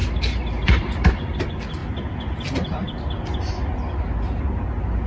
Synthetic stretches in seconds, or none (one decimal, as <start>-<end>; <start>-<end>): 0.0-1.1